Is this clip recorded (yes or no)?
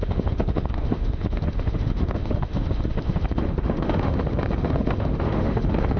no